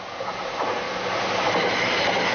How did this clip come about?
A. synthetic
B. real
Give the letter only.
B